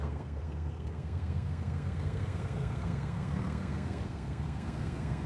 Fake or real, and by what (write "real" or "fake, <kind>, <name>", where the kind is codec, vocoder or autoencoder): fake, codec, SNAC